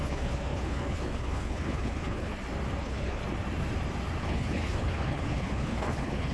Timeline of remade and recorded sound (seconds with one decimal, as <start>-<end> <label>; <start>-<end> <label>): 0.0-2.3 remade; 2.3-2.8 recorded; 2.8-3.2 remade; 3.2-4.2 recorded; 4.2-6.3 remade